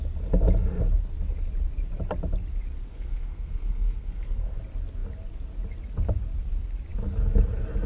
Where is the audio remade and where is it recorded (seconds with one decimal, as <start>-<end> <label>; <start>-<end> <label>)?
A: 0.0-2.9 recorded; 2.9-4.6 remade; 4.6-7.9 recorded